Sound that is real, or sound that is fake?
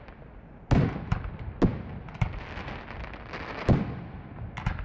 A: real